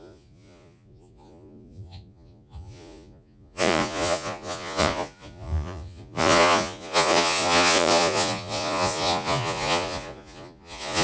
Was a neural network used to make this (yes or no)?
yes